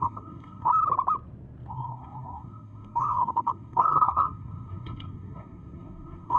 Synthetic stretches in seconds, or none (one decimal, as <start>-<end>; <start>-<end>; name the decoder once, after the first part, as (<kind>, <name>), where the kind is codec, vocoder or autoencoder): 0.0-0.7 (codec, SNAC); 1.7-6.4